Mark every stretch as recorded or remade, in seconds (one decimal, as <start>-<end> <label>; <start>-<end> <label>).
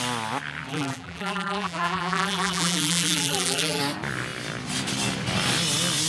0.0-0.7 recorded; 0.7-3.8 remade; 3.8-6.1 recorded